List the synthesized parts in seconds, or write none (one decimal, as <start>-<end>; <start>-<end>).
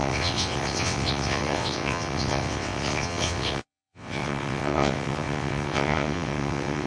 0.0-6.9